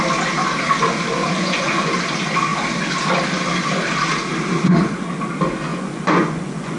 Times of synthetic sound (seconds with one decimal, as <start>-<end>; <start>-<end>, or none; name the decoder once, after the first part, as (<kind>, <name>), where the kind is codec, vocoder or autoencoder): 1.2-1.9 (vocoder, Vocos); 5.7-6.8